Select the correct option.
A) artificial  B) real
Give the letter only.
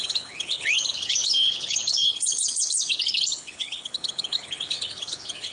A